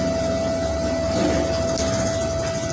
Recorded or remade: recorded